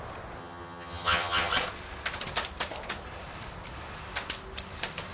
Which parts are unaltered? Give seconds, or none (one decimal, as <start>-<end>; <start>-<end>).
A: 0.0-0.4; 1.5-5.1